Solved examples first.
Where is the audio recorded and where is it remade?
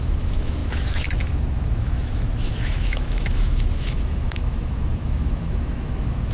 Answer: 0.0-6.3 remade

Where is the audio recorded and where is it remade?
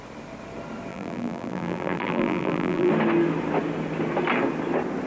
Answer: 0.0-0.9 recorded; 0.9-2.9 remade; 2.9-5.1 recorded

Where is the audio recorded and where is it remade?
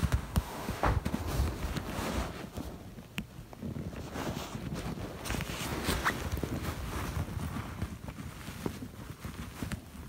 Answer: 0.0-1.2 remade; 1.2-10.1 recorded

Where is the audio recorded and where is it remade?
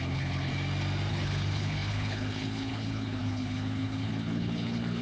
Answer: 0.0-0.5 remade; 0.5-1.1 recorded; 1.1-5.0 remade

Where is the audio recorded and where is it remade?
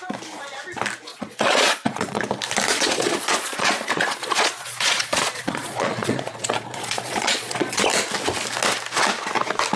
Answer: 0.0-1.1 recorded; 1.1-2.2 remade; 2.2-2.7 recorded; 2.7-7.8 remade; 7.8-9.8 recorded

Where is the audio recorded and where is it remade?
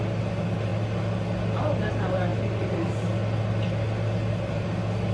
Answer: 0.0-5.1 recorded